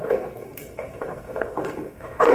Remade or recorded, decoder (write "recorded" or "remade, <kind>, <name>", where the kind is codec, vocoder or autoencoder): remade, codec, SNAC